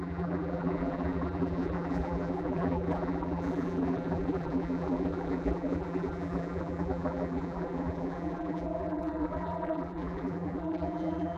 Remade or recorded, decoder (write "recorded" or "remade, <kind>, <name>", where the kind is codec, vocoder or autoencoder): remade, vocoder, BigVGAN v2